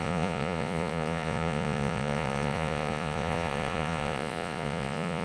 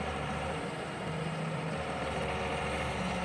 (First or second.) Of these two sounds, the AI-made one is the first